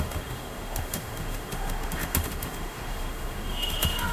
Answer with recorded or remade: remade